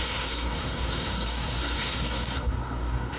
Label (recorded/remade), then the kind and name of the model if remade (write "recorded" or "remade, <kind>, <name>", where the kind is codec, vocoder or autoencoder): remade, codec, SNAC